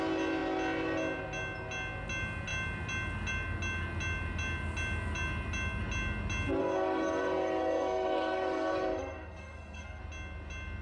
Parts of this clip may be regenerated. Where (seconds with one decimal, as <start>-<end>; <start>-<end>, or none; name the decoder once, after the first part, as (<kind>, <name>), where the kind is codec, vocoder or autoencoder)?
6.6-10.0 (codec, SNAC)